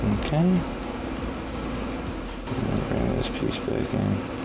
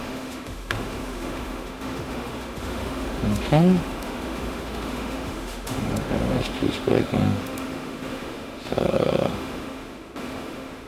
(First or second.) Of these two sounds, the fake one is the second